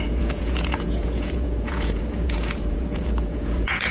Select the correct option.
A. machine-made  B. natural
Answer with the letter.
A